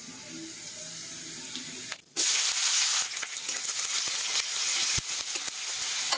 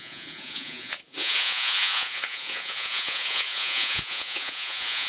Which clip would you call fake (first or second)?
second